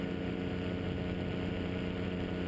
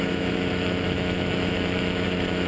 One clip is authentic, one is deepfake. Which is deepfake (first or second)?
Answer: second